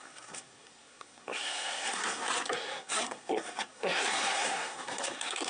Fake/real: fake